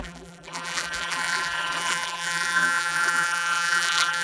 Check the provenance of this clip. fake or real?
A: fake